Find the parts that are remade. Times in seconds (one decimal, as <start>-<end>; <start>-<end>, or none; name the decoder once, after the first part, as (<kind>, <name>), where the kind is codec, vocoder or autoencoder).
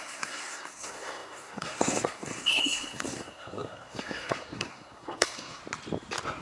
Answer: 0.0-5.6 (codec, SNAC)